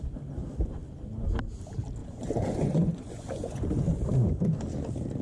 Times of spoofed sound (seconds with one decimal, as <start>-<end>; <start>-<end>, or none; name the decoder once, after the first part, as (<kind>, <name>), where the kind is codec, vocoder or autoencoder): 2.0-3.7 (vocoder, Vocos)